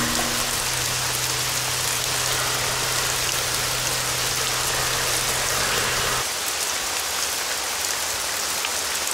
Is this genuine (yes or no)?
yes